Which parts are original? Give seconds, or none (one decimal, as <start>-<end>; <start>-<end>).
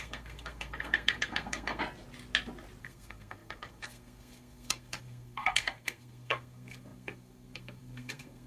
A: 1.8-2.8